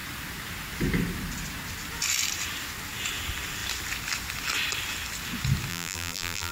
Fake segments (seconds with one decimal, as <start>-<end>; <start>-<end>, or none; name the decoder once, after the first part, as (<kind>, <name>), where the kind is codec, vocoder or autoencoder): 5.7-6.5 (vocoder, BigVGAN v2)